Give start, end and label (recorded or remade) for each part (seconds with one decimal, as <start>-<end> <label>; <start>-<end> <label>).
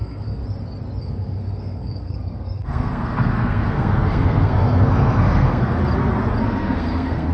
0.0-0.4 remade; 0.4-1.0 recorded; 1.0-5.8 remade; 5.8-6.4 recorded; 6.4-7.3 remade